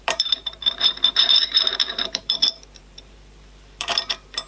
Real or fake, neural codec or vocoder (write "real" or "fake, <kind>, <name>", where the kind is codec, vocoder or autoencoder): fake, vocoder, BigVGAN v2